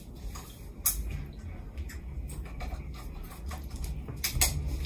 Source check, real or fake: real